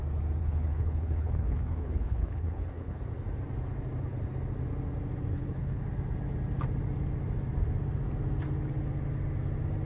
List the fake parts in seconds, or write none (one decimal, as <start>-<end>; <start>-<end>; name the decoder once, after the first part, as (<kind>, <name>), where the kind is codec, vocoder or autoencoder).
0.4-3.0 (codec, HILCodec); 5.3-5.8